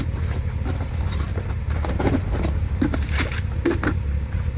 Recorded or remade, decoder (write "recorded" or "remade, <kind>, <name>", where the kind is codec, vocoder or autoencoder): recorded